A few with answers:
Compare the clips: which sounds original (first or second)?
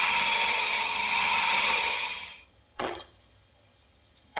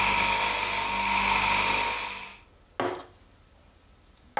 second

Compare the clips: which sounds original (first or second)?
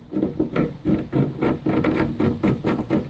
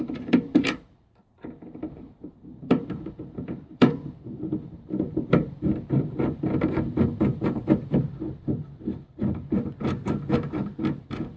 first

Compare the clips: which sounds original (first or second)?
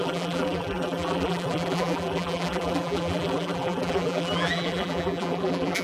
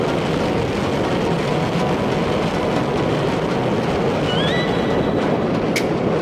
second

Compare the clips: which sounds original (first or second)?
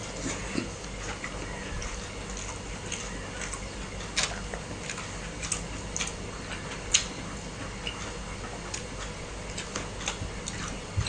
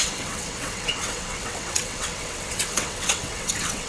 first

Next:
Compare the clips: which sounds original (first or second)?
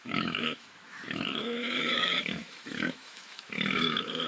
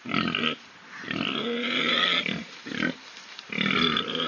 second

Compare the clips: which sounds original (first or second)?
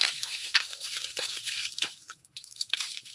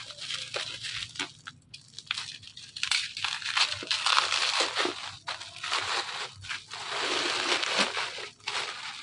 second